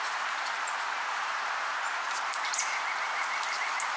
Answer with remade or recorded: recorded